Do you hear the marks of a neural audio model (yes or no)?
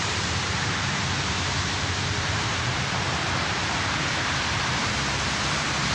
yes